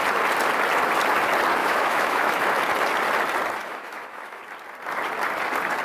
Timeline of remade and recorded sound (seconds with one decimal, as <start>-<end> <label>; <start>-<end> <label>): 0.0-1.6 recorded; 1.6-2.4 remade; 2.4-3.6 recorded; 3.6-4.4 remade; 4.4-5.8 recorded